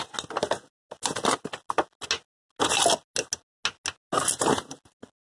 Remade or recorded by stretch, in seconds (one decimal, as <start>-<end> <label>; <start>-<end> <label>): 0.0-5.4 recorded